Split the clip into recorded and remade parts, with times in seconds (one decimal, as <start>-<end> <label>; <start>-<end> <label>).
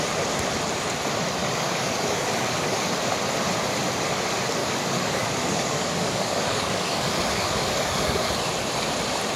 0.0-1.4 recorded; 1.4-2.8 remade; 2.8-4.6 recorded; 4.6-8.3 remade; 8.3-9.4 recorded